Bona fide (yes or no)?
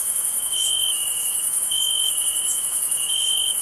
no